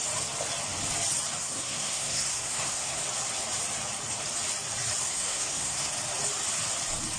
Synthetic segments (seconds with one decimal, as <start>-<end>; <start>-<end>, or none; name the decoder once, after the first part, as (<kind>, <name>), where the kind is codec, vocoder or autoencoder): 1.4-3.0 (codec, SNAC); 5.0-5.9